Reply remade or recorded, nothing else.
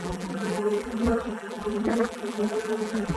remade